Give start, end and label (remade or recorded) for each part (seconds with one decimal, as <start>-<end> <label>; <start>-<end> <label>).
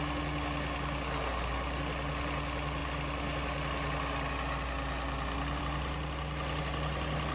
0.0-7.3 recorded